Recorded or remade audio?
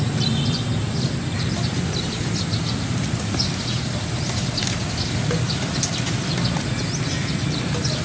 recorded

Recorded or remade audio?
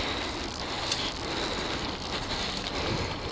recorded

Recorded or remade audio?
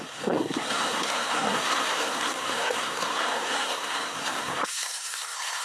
remade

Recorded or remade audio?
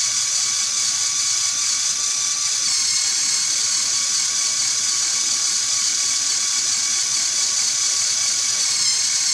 recorded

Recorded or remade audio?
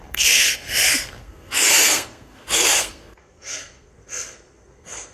remade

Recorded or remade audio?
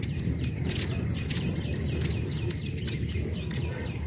recorded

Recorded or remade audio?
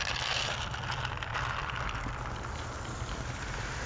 recorded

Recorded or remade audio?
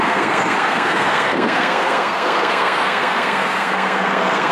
remade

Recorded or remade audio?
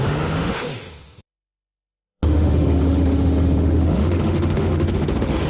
remade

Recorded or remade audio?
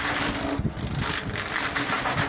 recorded